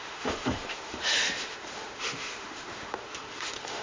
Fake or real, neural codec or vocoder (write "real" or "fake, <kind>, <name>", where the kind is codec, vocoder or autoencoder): fake, autoencoder, DAC-VAE